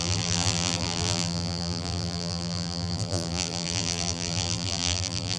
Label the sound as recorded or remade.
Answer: remade